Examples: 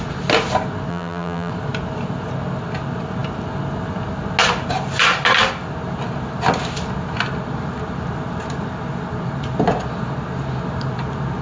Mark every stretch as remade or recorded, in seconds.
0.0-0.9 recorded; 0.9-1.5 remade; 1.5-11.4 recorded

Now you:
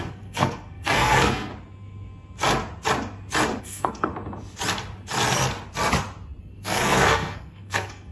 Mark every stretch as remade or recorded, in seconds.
0.0-1.5 remade; 1.5-3.6 recorded; 3.6-4.1 remade; 4.1-6.4 recorded; 6.4-8.1 remade

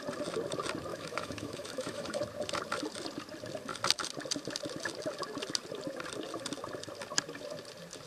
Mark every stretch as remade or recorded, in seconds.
0.0-0.9 recorded; 0.9-2.2 remade; 2.2-8.1 recorded

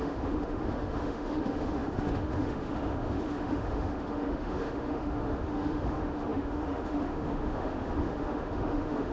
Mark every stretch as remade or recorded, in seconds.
0.0-9.1 remade

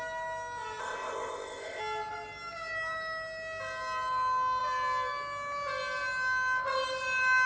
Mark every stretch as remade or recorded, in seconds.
0.0-0.8 recorded; 0.8-1.8 remade; 1.8-7.5 recorded

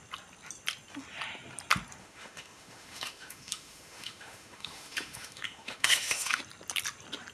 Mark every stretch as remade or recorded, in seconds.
0.0-2.0 recorded; 2.0-6.4 remade; 6.4-7.3 recorded

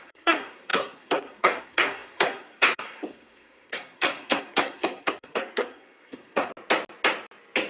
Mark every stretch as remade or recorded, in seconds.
0.0-6.5 remade; 6.5-7.7 recorded

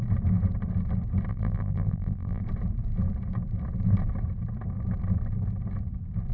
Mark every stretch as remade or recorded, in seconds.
0.0-1.3 recorded; 1.3-2.4 remade; 2.4-6.3 recorded